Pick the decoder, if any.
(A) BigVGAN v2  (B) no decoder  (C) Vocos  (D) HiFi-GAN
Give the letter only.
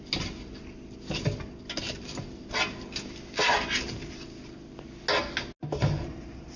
B